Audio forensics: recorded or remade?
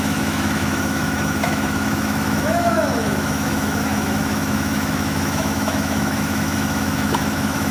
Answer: remade